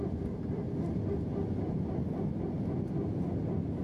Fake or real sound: real